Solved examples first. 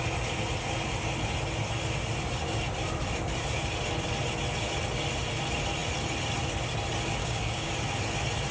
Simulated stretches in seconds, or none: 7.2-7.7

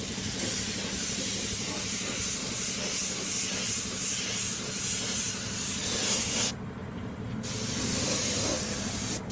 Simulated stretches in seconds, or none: none

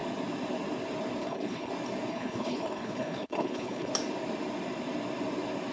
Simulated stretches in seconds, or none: 1.2-1.7; 2.1-3.9

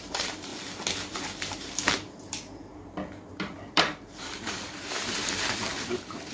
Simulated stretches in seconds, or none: 0.0-0.5; 1.5-2.7; 3.3-6.3

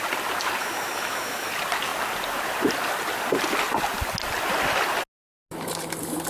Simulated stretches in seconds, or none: 0.6-1.5

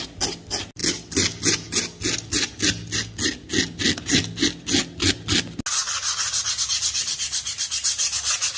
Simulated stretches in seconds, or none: none

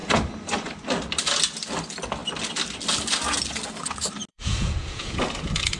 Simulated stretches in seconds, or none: 4.3-5.2

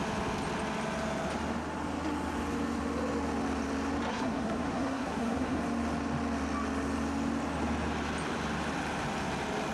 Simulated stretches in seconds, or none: 4.1-5.6